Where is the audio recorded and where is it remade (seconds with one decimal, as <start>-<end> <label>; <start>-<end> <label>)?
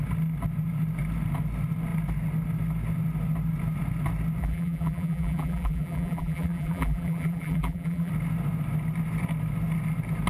0.0-4.4 recorded; 4.4-8.1 remade; 8.1-10.3 recorded